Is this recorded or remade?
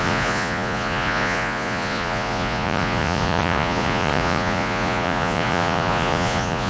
remade